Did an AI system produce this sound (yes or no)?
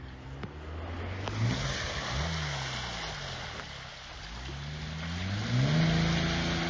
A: no